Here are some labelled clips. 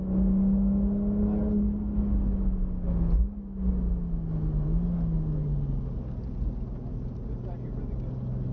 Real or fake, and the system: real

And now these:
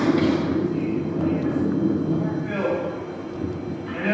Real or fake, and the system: real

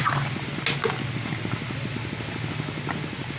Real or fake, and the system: real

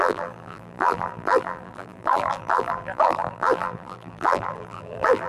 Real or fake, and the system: fake, vocoder, BigVGAN v2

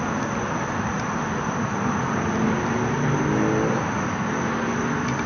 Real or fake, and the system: real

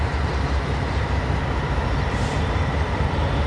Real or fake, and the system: fake, vocoder, BigVGAN v2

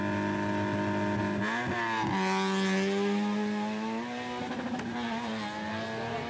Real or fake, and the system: real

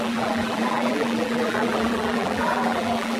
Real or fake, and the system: fake, vocoder, BigVGAN v2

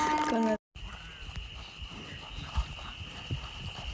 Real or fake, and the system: real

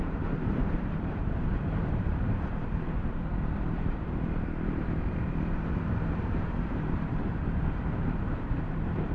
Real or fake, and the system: fake, vocoder, BigVGAN v2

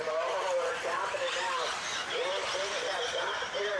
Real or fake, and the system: fake, vocoder, BigVGAN v2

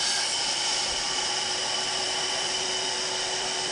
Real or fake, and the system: fake, vocoder, BigVGAN v2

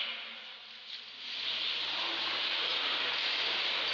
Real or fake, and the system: real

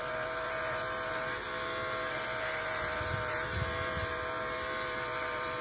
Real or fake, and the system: fake, vocoder, BigVGAN v2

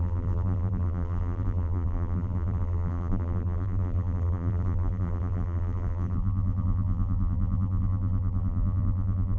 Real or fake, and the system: fake, vocoder, BigVGAN v2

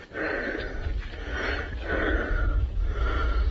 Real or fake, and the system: real